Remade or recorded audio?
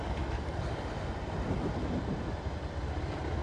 recorded